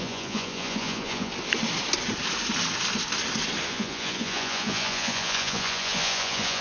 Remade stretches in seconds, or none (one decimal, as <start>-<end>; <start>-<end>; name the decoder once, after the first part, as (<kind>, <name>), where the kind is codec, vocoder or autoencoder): 0.0-1.3 (vocoder, Vocos); 3.7-6.6